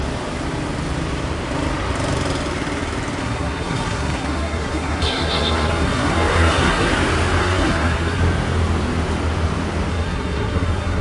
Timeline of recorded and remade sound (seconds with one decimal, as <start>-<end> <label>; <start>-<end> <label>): 0.0-3.2 recorded; 3.2-6.9 remade; 6.9-7.4 recorded; 7.4-8.2 remade; 8.2-9.9 recorded; 9.9-11.0 remade